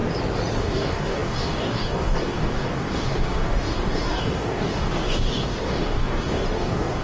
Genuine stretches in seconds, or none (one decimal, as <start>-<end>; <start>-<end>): 0.0-0.6